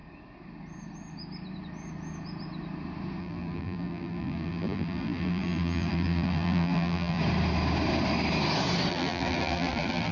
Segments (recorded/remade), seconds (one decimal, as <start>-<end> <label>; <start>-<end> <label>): 0.0-3.2 recorded; 3.2-7.2 remade; 7.2-8.9 recorded; 8.9-10.1 remade